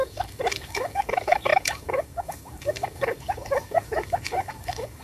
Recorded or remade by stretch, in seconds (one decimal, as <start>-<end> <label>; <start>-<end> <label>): 0.0-5.0 remade